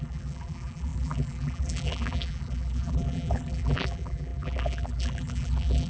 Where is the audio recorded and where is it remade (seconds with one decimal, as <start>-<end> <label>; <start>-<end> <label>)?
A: 0.0-5.9 remade